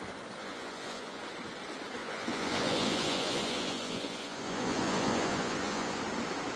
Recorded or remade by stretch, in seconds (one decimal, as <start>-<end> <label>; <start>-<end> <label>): 0.0-0.4 recorded; 0.4-1.2 remade; 1.2-2.0 recorded; 2.0-6.0 remade; 6.0-6.6 recorded

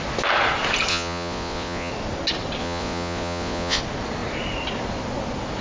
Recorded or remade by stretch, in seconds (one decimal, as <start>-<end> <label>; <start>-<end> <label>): 0.0-0.9 recorded; 0.9-1.9 remade; 1.9-2.6 recorded; 2.6-3.8 remade; 3.8-5.6 recorded

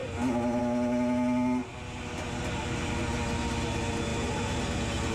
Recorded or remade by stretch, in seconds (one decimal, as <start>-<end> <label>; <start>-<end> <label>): 0.0-5.1 recorded